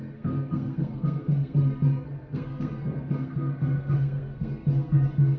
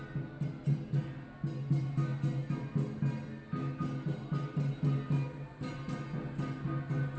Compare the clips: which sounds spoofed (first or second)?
first